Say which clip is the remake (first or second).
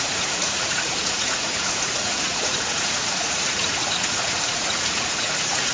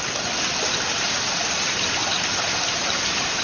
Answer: first